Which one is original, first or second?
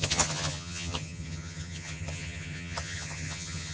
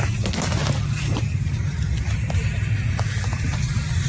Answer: second